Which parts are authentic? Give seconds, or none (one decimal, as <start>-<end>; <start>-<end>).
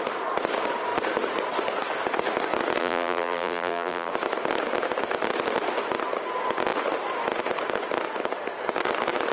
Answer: 0.0-2.8; 4.1-9.3